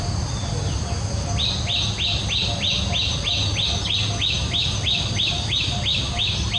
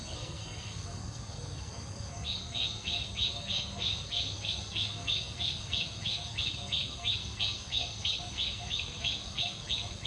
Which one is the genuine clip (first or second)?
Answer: first